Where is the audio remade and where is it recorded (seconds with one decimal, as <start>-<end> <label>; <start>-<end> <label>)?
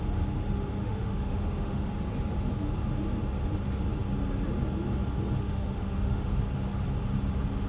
0.0-0.8 recorded; 0.8-1.9 remade; 1.9-5.4 recorded; 5.4-6.4 remade; 6.4-7.7 recorded